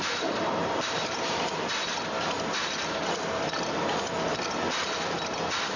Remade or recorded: remade